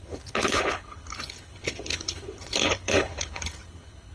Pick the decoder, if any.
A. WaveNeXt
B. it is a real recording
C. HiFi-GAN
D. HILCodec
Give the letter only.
D